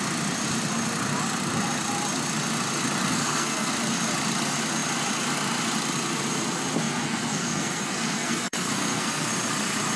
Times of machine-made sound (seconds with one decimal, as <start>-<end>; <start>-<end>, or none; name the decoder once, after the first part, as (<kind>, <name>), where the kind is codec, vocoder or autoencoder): 3.1-3.7 (codec, SNAC); 6.7-9.3